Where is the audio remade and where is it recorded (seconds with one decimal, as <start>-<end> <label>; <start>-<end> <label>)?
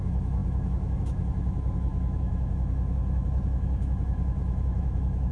0.0-5.3 remade